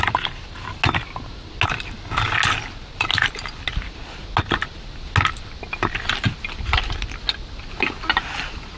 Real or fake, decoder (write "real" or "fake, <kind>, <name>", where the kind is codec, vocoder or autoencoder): real